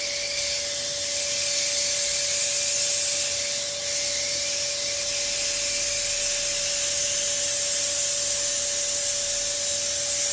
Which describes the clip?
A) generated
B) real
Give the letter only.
B